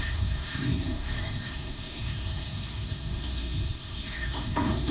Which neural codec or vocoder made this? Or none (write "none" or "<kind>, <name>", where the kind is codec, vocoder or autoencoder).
codec, SNAC